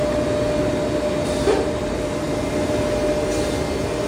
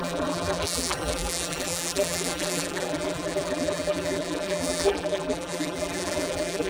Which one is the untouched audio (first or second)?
first